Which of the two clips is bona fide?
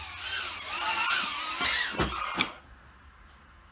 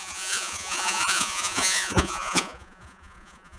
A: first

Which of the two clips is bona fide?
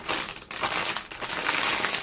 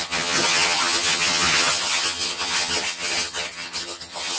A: first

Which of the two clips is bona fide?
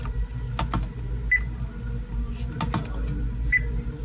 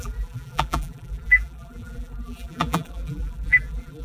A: first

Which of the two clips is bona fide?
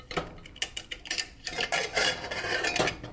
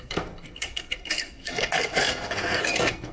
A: first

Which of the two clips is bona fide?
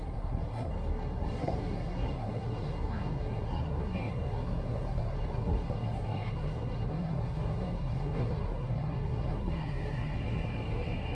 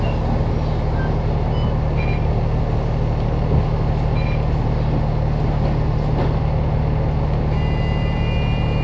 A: second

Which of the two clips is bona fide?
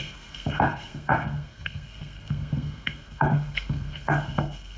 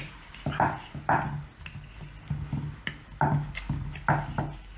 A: second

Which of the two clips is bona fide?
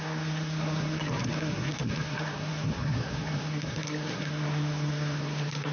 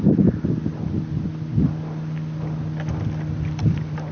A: second